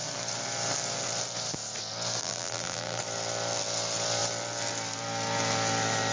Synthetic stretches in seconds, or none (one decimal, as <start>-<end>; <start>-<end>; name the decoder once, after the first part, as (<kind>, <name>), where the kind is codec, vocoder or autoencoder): 2.2-3.0 (vocoder, BigVGAN v2)